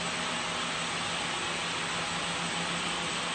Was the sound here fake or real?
real